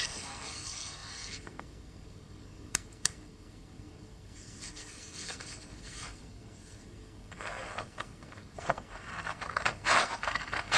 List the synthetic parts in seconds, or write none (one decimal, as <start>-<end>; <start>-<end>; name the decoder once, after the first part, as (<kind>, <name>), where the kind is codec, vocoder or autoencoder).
0.0-10.8 (codec, SNAC)